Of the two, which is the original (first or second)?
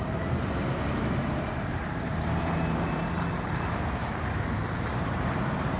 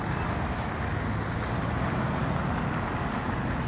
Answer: second